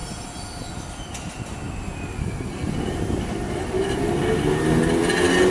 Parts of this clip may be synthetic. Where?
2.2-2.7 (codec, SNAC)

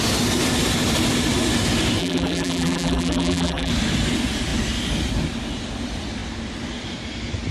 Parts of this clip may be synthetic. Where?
2.0-3.7 (vocoder, BigVGAN v2)

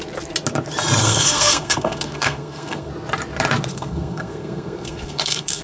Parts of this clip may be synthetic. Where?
1.0-2.9 (codec, SNAC); 3.7-5.6

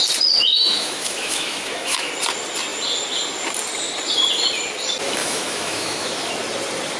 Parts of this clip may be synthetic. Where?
0.5-2.1 (autoencoder, DAC-VAE); 5.2-6.3

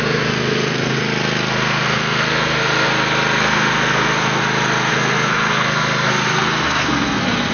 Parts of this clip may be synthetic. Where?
0.0-1.0 (codec, SNAC); 1.5-2.9; 3.4-4.4; 4.9-7.5